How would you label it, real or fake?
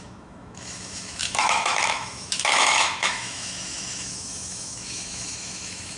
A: fake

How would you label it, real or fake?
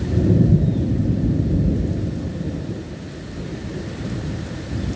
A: real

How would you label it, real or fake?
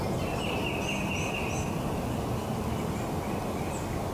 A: real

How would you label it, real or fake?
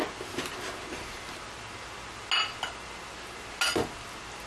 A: real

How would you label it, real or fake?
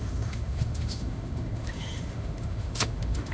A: fake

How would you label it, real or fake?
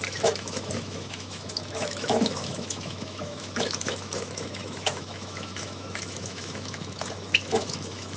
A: fake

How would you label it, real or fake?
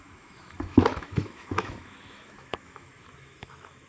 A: fake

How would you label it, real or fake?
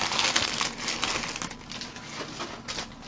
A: real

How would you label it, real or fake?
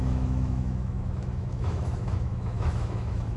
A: fake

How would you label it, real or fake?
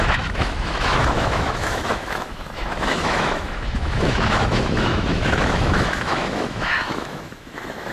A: fake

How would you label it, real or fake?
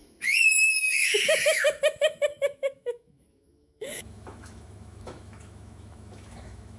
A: fake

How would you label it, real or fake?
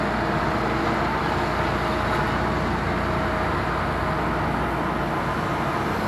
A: real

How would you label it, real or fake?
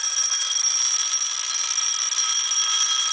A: real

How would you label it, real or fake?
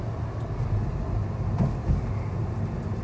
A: real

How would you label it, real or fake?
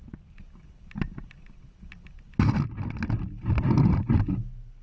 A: real